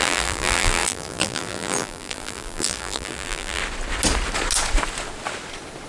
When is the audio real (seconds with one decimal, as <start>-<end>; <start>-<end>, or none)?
3.6-5.9